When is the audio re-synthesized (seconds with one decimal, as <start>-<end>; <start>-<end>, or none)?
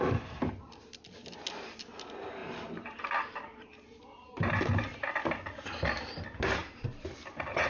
2.4-4.9; 6.6-7.7